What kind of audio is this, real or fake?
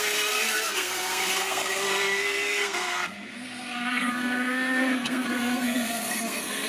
fake